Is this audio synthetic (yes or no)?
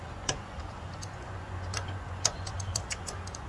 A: yes